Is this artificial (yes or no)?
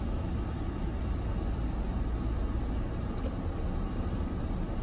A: no